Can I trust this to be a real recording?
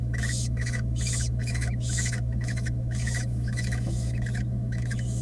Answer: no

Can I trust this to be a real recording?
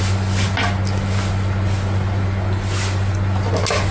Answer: yes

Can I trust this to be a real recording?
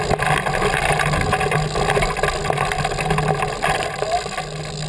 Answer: yes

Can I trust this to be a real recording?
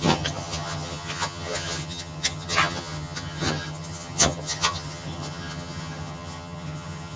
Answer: no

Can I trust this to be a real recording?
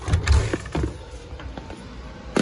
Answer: yes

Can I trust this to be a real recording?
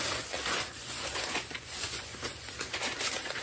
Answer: no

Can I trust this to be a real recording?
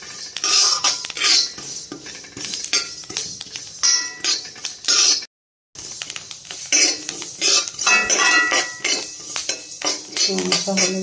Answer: yes